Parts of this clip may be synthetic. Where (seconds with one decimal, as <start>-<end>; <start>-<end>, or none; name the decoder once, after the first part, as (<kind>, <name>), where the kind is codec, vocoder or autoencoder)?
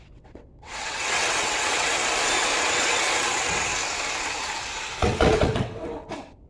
0.0-2.0 (vocoder, WaveNeXt); 2.6-3.7; 5.0-6.5